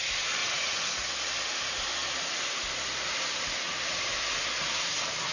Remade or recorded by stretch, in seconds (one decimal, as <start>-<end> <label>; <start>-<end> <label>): 0.0-0.4 recorded; 0.4-1.1 remade; 1.1-5.3 recorded

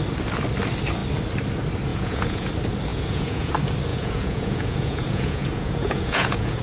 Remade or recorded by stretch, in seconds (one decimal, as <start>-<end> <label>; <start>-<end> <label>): 0.0-1.9 recorded; 1.9-2.5 remade; 2.5-2.9 recorded; 2.9-3.5 remade; 3.5-3.9 recorded; 3.9-6.6 remade

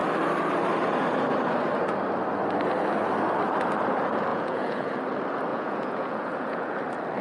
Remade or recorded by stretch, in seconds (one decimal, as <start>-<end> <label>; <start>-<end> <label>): 0.0-4.3 recorded; 4.3-5.0 remade; 5.0-5.5 recorded; 5.5-6.7 remade; 6.7-7.2 recorded

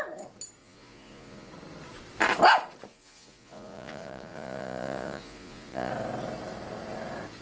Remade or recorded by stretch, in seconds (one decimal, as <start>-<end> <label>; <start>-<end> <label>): 0.0-0.6 recorded; 0.6-1.5 remade; 1.5-2.9 recorded; 2.9-5.9 remade; 5.9-7.4 recorded

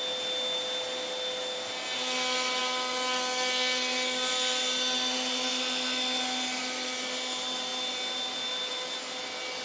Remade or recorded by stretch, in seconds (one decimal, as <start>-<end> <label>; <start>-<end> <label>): 0.0-9.6 recorded

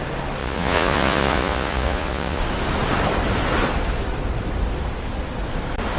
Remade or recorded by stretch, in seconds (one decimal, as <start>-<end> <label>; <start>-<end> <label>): 0.0-0.4 recorded; 0.4-2.4 remade; 2.4-6.0 recorded